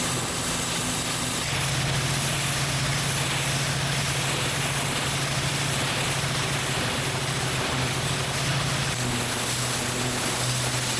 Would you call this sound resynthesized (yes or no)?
no